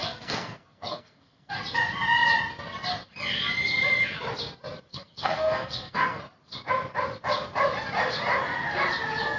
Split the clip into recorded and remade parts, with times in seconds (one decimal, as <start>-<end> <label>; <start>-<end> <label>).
0.0-1.5 remade; 1.5-4.9 recorded; 4.9-6.2 remade; 6.2-9.4 recorded